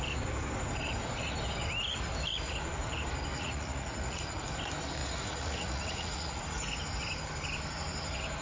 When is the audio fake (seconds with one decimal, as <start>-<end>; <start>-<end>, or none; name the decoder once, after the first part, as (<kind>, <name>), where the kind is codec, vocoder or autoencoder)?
3.3-4.4 (vocoder, Vocos); 5.0-6.4